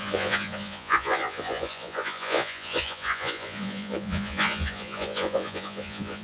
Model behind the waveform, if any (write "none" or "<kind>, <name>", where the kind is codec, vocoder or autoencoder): vocoder, Vocos